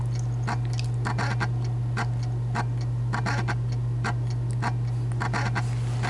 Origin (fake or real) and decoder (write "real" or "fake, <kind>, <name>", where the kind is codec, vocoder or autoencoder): real